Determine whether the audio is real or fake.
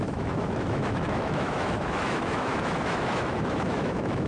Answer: fake